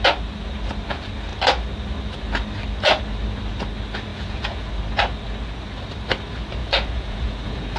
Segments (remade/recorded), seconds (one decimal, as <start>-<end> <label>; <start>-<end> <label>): 0.0-4.1 recorded; 4.1-4.7 remade; 4.7-6.6 recorded; 6.6-7.8 remade